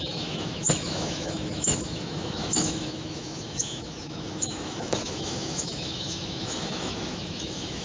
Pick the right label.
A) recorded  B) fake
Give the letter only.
B